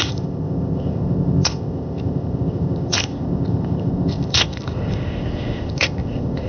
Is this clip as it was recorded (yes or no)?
no